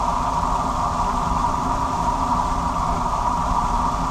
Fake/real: real